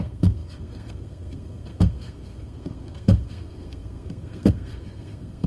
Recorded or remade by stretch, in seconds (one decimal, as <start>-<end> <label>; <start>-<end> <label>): 0.0-5.5 remade